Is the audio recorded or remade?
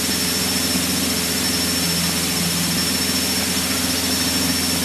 recorded